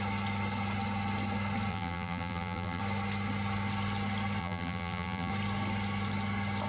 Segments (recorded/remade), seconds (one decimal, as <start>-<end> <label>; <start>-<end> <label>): 0.0-1.7 recorded; 1.7-2.8 remade; 2.8-4.4 recorded; 4.4-5.3 remade; 5.3-6.7 recorded